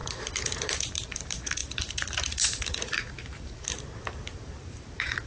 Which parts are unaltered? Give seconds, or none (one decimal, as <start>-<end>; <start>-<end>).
none